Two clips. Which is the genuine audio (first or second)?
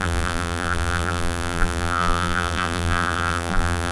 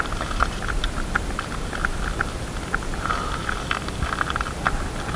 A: second